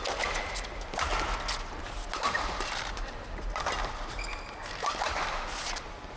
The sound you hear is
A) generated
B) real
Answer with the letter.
B